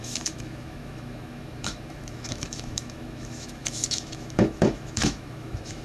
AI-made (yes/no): yes